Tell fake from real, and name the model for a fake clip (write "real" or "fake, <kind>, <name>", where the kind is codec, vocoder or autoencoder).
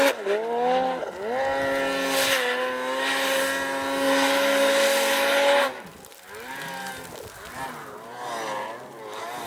real